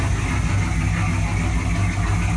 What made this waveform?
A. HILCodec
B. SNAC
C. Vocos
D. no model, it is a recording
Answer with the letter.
D